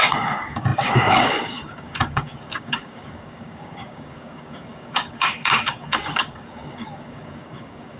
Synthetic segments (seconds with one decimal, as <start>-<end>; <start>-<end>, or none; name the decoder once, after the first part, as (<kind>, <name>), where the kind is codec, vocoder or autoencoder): 0.0-8.0 (codec, DAC)